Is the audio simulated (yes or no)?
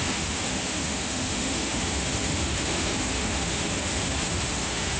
yes